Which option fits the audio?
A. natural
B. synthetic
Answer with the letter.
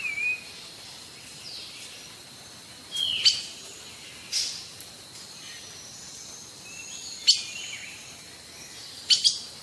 A